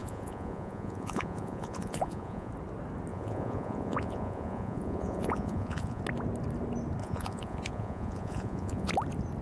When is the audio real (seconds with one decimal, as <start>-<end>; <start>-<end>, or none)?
2.5-3.1; 6.0-7.0; 8.9-9.4